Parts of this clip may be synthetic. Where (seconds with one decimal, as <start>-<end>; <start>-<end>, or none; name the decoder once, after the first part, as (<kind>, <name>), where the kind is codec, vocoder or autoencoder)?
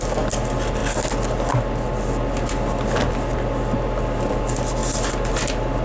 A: none